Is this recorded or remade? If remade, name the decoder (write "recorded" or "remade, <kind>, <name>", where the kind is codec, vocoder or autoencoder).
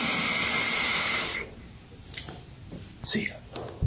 remade, vocoder, BigVGAN v2